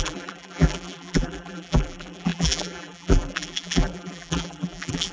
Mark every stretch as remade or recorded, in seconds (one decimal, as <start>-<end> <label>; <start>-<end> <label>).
0.0-5.1 remade